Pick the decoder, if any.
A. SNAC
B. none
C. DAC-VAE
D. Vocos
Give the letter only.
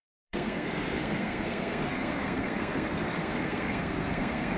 A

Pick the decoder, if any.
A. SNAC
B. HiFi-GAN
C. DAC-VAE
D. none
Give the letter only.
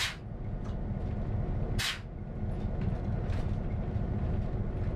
D